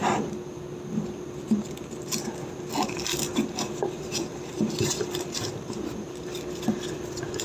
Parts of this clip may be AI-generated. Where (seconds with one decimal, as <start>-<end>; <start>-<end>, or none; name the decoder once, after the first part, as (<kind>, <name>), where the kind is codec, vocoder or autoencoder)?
none